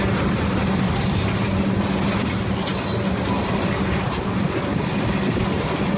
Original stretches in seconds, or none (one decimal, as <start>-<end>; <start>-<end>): 0.0-6.0